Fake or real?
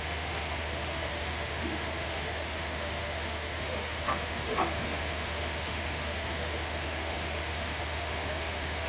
fake